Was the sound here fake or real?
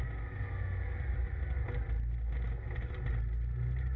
real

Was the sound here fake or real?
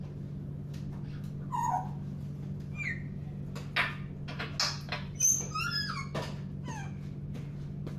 real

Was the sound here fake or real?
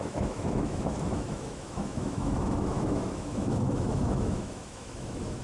fake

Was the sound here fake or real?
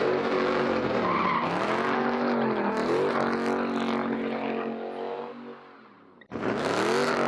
real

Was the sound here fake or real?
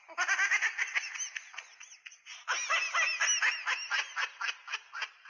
real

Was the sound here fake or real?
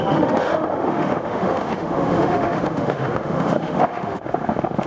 fake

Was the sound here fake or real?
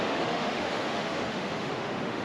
fake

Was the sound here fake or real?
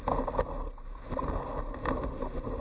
real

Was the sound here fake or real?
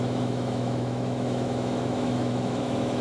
fake